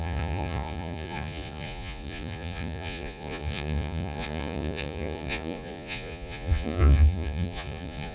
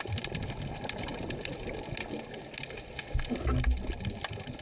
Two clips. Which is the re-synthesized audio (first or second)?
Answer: first